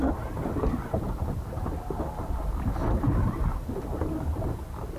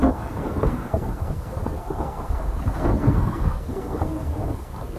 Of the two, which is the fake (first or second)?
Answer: second